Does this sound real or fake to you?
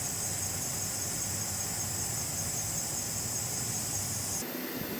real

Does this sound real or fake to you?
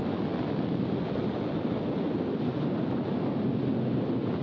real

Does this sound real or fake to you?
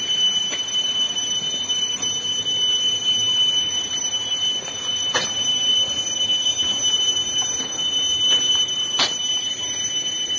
real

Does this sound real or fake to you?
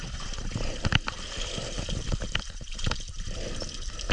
real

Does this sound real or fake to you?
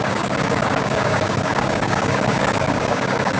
fake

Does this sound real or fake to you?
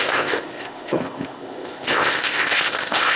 fake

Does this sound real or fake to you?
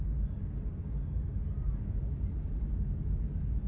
real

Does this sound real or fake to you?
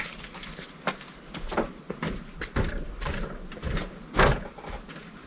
real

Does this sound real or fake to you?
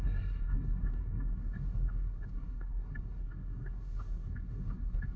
fake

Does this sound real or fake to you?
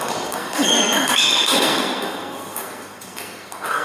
fake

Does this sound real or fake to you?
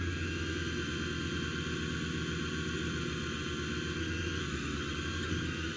real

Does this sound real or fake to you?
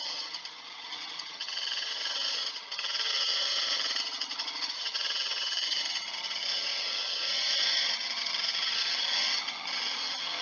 fake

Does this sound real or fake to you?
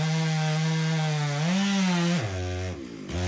real